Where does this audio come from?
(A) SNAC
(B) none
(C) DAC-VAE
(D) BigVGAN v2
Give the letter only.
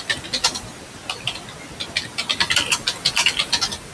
B